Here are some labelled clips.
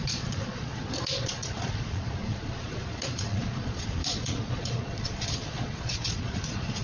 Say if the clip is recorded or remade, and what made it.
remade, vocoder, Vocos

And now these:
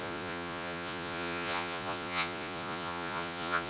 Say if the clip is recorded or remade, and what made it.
remade, vocoder, Vocos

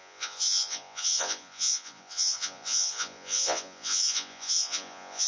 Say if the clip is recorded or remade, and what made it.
remade, vocoder, Vocos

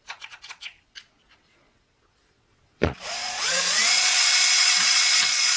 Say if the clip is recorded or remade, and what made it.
remade, vocoder, Vocos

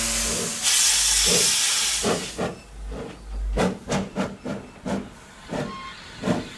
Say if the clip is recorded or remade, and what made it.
recorded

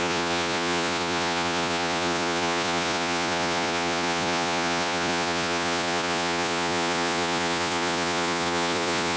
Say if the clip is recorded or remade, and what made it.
remade, vocoder, Vocos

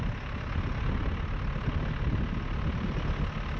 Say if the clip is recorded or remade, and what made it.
recorded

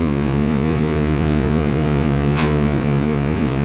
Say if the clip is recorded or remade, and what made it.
remade, vocoder, Vocos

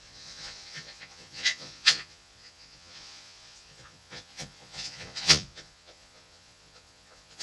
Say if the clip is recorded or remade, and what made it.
remade, vocoder, Vocos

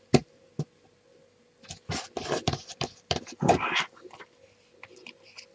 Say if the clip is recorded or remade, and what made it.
recorded